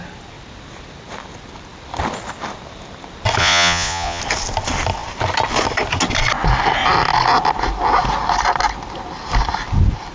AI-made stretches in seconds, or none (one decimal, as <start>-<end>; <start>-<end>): 3.4-4.2